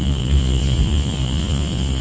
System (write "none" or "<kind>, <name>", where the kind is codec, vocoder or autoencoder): vocoder, Vocos